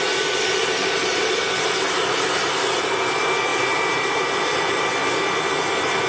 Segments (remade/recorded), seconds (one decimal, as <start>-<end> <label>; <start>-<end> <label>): 0.0-0.8 recorded; 0.8-1.4 remade; 1.4-3.5 recorded; 3.5-4.8 remade; 4.8-6.1 recorded